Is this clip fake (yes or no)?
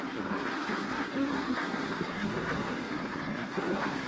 yes